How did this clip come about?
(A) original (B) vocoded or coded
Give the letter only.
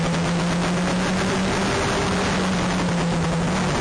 A